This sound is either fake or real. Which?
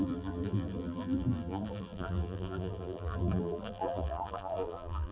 fake